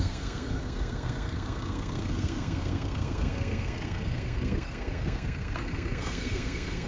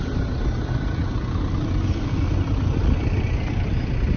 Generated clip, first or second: first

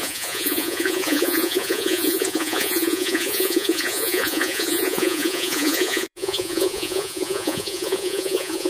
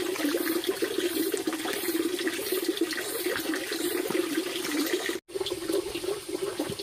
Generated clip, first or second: first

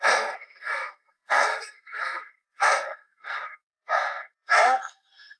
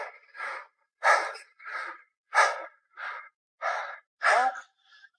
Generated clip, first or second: first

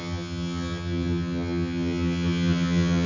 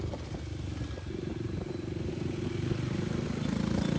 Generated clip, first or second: first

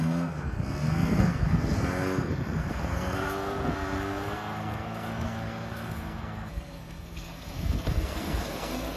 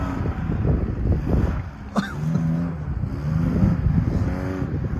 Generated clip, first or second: first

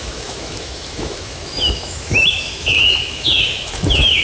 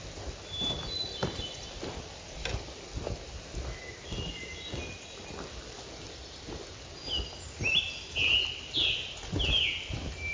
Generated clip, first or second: first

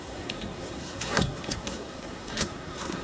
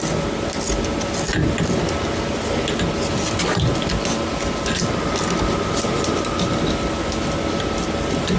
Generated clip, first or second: first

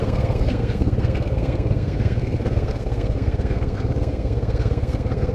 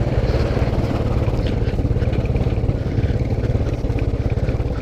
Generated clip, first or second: first